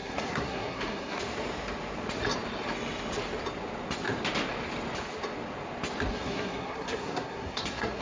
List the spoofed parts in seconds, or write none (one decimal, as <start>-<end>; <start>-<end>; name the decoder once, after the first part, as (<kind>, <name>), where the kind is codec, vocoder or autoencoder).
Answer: 0.0-1.2 (codec, SNAC); 6.1-8.0